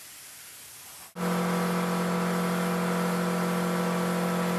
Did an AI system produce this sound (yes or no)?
no